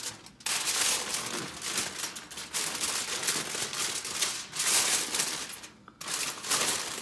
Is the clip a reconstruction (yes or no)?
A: no